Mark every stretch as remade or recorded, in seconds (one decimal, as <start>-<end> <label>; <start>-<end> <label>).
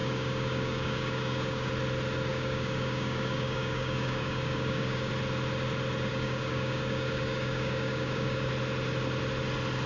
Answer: 0.0-1.7 remade; 1.7-2.3 recorded; 2.3-5.1 remade; 5.1-6.1 recorded; 6.1-8.5 remade; 8.5-9.9 recorded